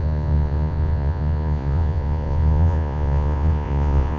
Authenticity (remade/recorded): remade